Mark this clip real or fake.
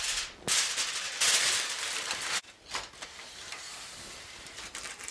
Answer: real